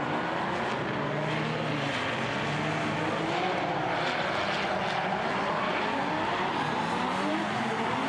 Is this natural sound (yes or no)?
yes